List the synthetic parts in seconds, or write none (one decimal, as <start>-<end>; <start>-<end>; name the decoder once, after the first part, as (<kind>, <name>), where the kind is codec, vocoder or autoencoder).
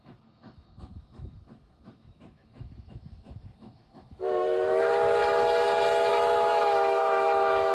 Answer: 0.0-5.2 (autoencoder, DAC-VAE); 6.1-7.7